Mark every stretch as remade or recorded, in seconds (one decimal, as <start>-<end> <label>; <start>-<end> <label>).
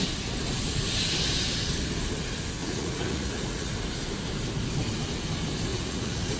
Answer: 0.0-2.6 recorded; 2.6-3.7 remade; 3.7-5.7 recorded; 5.7-6.4 remade